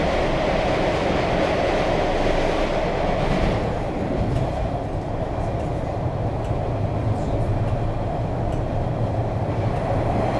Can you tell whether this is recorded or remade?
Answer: recorded